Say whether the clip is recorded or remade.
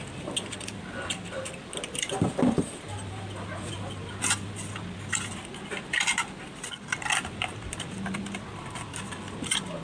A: recorded